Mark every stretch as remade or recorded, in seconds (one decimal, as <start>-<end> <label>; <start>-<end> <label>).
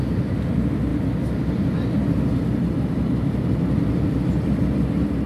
0.0-5.3 recorded